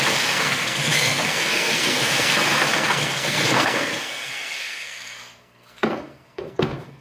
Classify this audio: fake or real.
fake